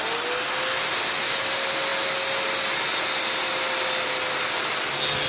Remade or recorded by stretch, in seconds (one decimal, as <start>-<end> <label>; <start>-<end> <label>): 0.0-5.3 recorded